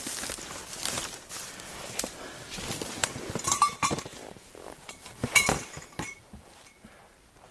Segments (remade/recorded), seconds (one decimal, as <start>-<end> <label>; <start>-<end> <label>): 0.0-3.0 recorded; 3.0-6.9 remade; 6.9-7.5 recorded